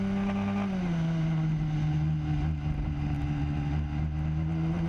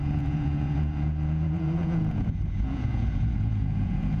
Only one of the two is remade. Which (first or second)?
second